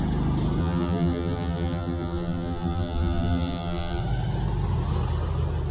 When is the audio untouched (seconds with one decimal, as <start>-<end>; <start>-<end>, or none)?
0.0-0.6; 4.0-5.7

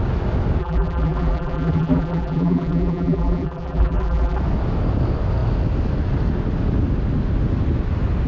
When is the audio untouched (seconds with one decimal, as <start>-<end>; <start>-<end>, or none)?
0.0-0.6; 4.4-8.3